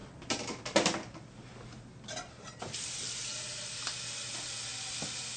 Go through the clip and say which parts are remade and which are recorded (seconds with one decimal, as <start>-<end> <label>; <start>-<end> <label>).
0.0-5.4 recorded